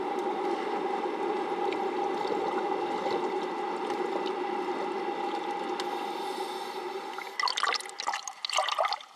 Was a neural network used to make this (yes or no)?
no